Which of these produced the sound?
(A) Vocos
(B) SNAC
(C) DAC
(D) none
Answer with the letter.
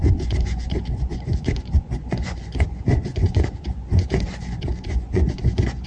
A